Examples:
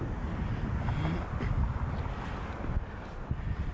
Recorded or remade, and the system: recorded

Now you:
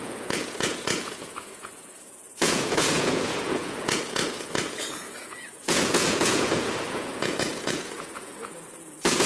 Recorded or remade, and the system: remade, vocoder, Vocos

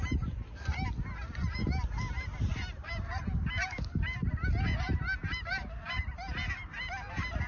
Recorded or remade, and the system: recorded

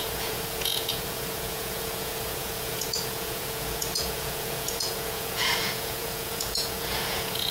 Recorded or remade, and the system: remade, vocoder, Vocos